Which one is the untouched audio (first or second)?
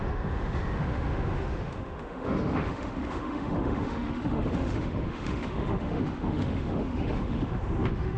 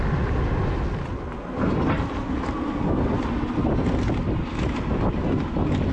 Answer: second